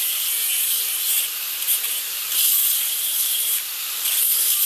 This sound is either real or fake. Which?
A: fake